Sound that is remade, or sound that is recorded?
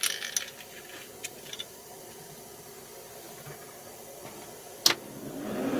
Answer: recorded